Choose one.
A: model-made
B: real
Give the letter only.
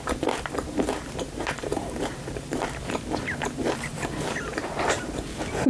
A